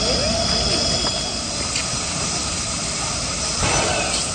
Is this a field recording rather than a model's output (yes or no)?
yes